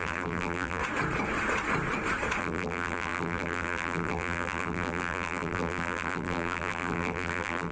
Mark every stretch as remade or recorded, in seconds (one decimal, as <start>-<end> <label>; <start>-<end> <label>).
0.0-0.8 remade; 0.8-2.4 recorded; 2.4-7.7 remade

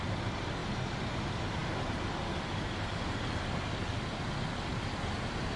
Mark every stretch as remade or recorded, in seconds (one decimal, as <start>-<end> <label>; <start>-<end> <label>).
0.0-5.6 recorded

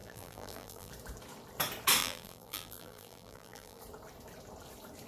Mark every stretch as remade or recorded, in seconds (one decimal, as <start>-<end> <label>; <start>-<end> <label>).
0.0-0.9 remade; 0.9-2.0 recorded; 2.0-3.8 remade; 3.8-5.1 recorded